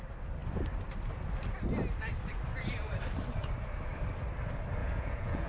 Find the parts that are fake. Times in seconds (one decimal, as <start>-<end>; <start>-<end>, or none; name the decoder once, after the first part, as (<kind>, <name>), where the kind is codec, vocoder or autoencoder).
4.8-5.5 (vocoder, Vocos)